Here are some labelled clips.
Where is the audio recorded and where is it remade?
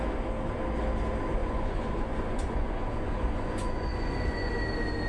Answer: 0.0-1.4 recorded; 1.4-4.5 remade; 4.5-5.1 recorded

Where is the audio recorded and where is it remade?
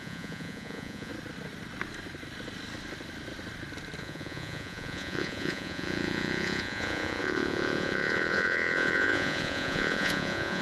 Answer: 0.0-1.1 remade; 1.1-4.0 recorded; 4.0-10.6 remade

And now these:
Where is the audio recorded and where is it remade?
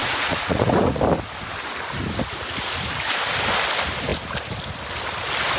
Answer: 0.0-1.0 remade; 1.0-5.6 recorded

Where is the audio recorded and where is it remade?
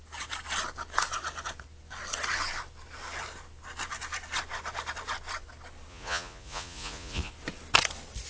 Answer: 0.0-5.9 recorded; 5.9-7.3 remade; 7.3-8.3 recorded